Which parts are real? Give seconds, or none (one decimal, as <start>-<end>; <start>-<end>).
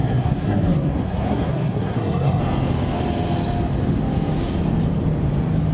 2.4-5.7